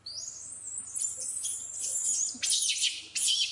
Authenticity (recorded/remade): recorded